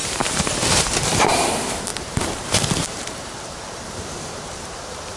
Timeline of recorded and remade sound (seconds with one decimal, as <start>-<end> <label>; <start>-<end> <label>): 0.0-5.2 remade